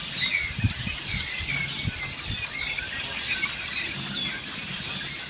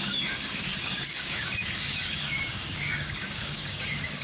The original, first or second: first